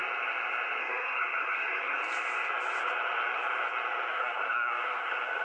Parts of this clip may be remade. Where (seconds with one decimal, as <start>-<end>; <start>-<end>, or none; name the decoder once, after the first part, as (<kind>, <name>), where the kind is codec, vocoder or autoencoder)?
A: 0.8-2.0 (codec, SNAC); 4.1-5.4